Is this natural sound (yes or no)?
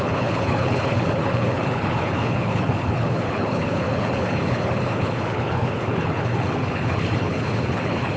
no